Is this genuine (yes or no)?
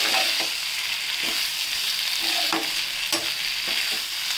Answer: yes